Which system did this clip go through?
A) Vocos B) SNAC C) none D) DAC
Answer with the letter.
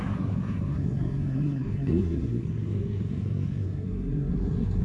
B